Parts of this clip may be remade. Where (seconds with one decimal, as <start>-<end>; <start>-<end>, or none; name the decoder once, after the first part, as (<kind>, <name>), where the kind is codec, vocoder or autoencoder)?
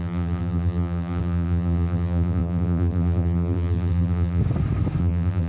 0.0-4.4 (vocoder, BigVGAN v2); 5.0-5.5